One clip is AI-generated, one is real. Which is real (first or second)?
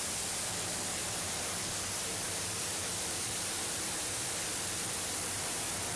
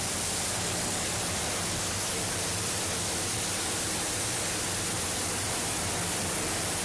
second